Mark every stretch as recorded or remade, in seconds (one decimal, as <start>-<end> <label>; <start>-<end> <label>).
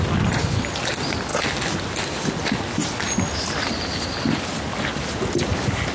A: 0.0-5.9 recorded